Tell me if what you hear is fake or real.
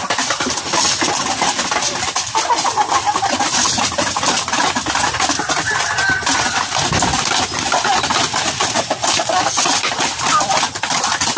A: real